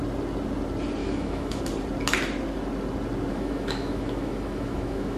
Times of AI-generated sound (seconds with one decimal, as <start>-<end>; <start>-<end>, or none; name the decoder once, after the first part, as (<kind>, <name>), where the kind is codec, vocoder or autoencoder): 1.0-1.6 (autoencoder, DAC-VAE); 3.3-5.2